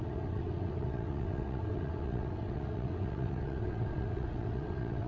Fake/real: fake